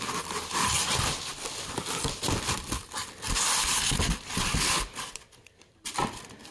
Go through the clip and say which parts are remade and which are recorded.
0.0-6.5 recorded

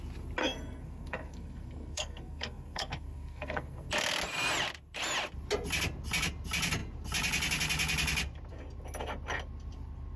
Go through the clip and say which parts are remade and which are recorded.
0.0-0.4 recorded; 0.4-3.9 remade; 3.9-10.2 recorded

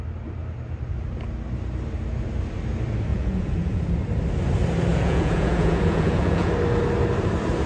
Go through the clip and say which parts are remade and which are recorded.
0.0-3.1 recorded; 3.1-3.8 remade; 3.8-4.9 recorded; 4.9-6.5 remade; 6.5-7.7 recorded

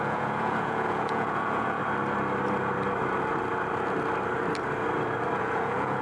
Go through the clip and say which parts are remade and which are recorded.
0.0-1.8 remade; 1.8-5.4 recorded; 5.4-6.0 remade

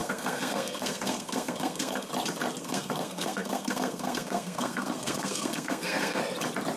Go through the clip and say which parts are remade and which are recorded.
0.0-2.1 remade; 2.1-2.6 recorded; 2.6-6.2 remade; 6.2-6.8 recorded

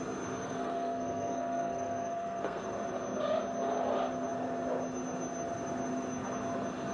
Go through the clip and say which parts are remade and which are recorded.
0.0-0.4 recorded; 0.4-2.6 remade; 2.6-6.9 recorded

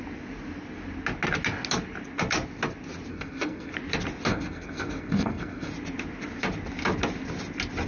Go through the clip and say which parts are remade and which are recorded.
0.0-3.1 recorded; 3.1-3.7 remade; 3.7-4.3 recorded; 4.3-5.7 remade; 5.7-7.9 recorded